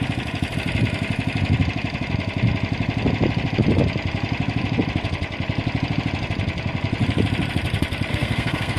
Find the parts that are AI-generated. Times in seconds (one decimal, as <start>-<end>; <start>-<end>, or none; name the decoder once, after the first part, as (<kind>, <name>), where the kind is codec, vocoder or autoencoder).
8.1-8.8 (codec, SNAC)